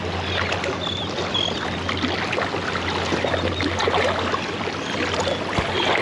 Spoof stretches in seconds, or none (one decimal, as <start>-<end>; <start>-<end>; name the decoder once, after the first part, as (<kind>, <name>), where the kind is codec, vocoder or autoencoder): none